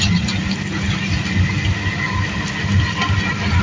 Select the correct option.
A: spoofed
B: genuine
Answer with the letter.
B